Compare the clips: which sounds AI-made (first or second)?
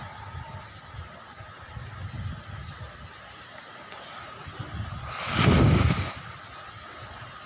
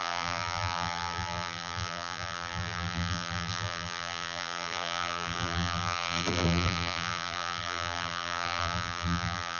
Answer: second